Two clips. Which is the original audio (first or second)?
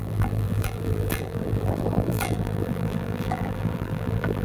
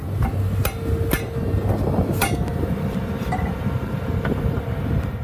second